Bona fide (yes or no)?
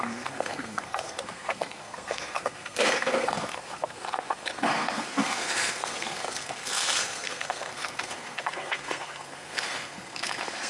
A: no